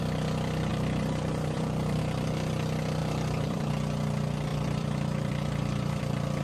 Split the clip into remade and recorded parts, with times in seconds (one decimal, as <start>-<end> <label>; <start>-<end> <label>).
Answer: 0.0-0.7 recorded; 0.7-2.0 remade; 2.0-3.0 recorded; 3.0-3.7 remade; 3.7-4.5 recorded; 4.5-6.0 remade; 6.0-6.4 recorded